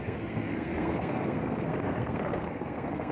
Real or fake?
fake